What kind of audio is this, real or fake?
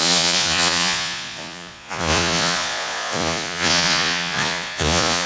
fake